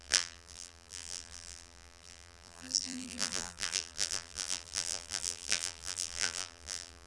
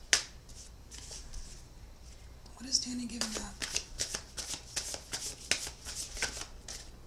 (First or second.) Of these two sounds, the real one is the second